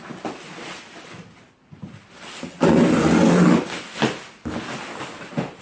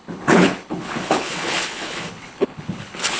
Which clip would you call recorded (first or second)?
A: first